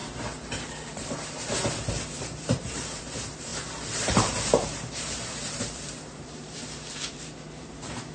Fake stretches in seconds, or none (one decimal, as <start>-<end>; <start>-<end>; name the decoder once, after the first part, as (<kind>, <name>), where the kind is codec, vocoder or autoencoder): 1.9-8.1 (vocoder, BigVGAN v2)